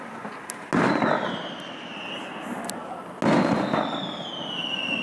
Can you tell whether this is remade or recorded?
recorded